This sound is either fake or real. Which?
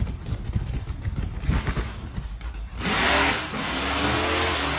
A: real